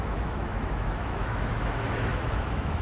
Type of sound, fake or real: fake